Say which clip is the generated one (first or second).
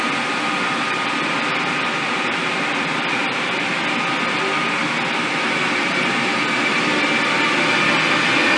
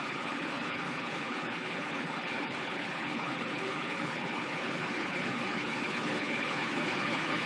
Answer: second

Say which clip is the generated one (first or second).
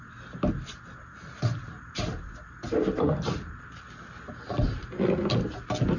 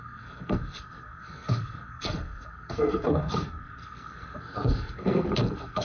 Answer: second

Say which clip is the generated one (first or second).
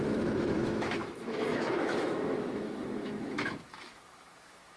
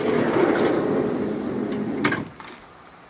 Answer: first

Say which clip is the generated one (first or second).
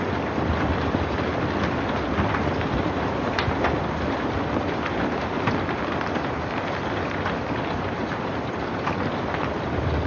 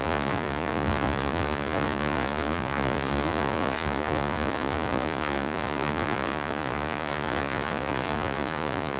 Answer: second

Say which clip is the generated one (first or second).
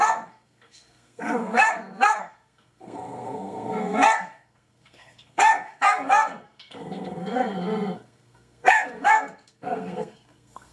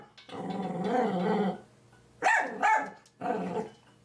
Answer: first